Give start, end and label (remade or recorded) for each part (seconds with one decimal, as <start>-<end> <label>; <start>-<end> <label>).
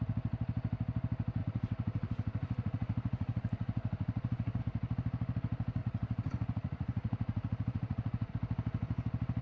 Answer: 0.0-1.4 recorded; 1.4-4.6 remade; 4.6-5.8 recorded; 5.8-8.3 remade; 8.3-9.4 recorded